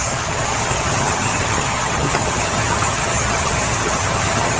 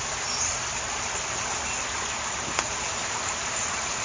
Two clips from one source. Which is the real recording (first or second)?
second